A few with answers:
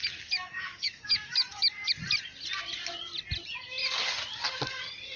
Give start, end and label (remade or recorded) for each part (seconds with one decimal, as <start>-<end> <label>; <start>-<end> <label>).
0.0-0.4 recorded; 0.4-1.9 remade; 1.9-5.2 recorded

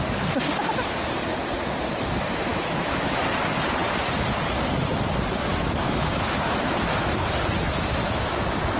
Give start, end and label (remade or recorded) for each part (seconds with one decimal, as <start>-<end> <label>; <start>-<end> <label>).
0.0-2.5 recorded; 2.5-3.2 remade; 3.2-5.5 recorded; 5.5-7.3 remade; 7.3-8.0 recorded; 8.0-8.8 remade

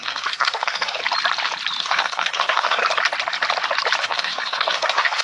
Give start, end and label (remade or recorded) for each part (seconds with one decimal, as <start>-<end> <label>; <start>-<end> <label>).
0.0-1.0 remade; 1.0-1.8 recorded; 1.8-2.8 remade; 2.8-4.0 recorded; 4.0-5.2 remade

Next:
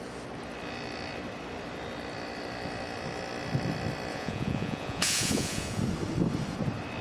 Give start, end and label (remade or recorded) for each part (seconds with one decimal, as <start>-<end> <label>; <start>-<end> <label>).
0.0-4.1 recorded; 4.1-5.8 remade; 5.8-7.0 recorded

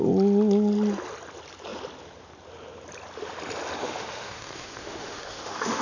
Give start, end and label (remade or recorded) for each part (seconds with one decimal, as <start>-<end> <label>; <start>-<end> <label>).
0.0-3.8 recorded; 3.8-5.8 remade

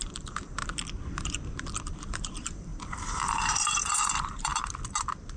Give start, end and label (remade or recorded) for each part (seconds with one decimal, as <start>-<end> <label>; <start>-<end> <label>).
0.0-0.6 remade; 0.6-1.2 recorded; 1.2-4.5 remade; 4.5-5.4 recorded

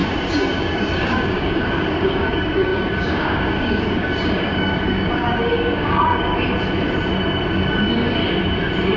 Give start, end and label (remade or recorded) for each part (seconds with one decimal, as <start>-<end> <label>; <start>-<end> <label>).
0.0-6.3 remade; 6.3-7.5 recorded; 7.5-8.2 remade; 8.2-9.0 recorded